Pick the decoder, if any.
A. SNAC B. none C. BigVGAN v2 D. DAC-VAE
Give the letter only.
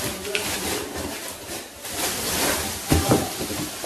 C